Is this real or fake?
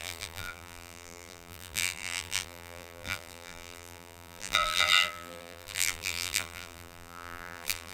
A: fake